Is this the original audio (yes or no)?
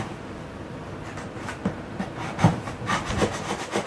yes